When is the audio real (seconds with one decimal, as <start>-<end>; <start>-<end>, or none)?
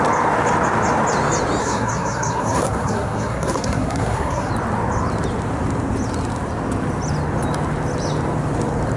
0.0-1.6; 4.5-9.0